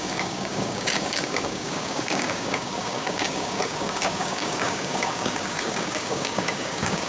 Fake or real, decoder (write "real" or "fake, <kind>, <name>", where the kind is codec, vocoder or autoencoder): fake, codec, DAC